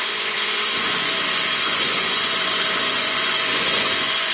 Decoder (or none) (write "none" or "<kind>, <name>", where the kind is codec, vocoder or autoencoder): vocoder, Vocos